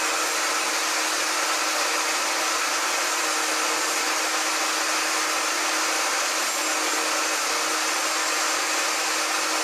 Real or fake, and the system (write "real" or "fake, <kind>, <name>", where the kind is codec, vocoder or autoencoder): real